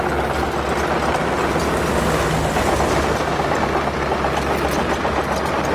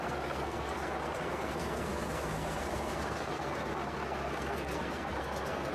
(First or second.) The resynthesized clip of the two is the second